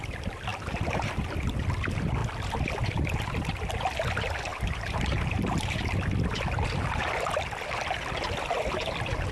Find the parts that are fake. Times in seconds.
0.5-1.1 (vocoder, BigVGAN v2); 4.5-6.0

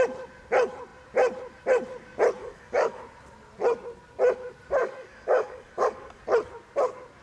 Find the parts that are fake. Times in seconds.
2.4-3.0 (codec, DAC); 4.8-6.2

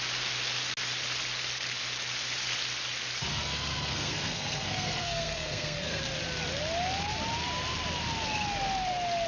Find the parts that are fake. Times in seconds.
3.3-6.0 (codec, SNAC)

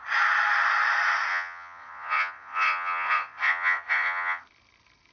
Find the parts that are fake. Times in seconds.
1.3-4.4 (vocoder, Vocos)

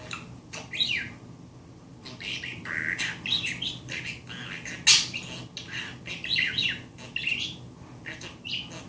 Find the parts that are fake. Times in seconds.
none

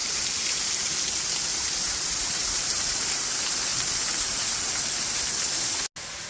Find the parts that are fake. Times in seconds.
0.0-0.9 (vocoder, BigVGAN v2); 1.5-3.0; 3.7-5.2

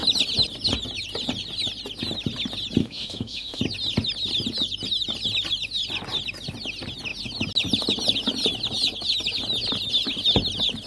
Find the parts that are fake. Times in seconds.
2.8-3.6 (autoencoder, DAC-VAE)

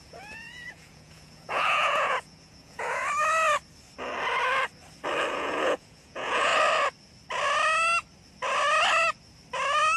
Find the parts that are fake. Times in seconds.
0.0-3.0 (vocoder, Vocos); 5.3-6.5